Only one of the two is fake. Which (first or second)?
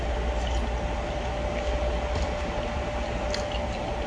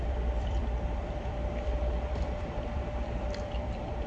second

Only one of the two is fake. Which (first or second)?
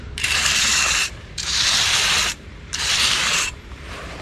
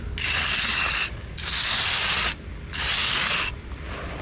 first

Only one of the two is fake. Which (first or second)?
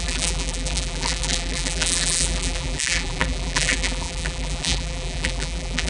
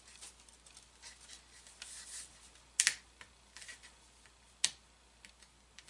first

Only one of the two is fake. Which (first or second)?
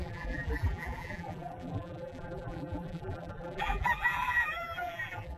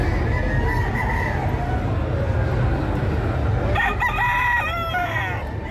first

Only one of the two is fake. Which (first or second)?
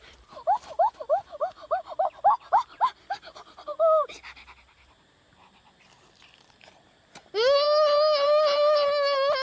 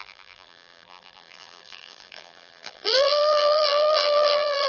second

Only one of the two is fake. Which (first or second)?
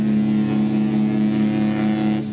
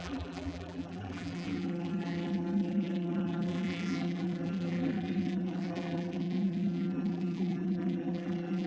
second